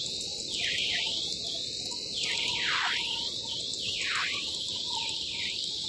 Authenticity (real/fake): fake